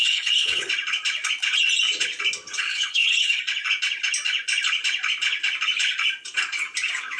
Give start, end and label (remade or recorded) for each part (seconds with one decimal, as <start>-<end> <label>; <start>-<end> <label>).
0.0-0.7 remade; 0.7-2.7 recorded; 2.7-3.4 remade; 3.4-7.2 recorded